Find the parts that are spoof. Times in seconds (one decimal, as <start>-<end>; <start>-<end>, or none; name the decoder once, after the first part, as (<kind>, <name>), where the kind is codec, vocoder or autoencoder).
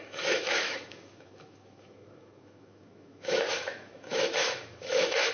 0.0-5.3 (autoencoder, DAC-VAE)